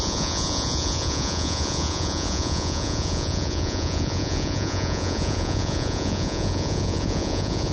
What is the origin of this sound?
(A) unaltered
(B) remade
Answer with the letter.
B